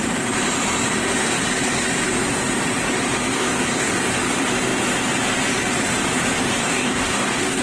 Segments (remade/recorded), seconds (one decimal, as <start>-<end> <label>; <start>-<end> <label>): 0.0-3.3 recorded; 3.3-3.9 remade; 3.9-6.6 recorded; 6.6-7.6 remade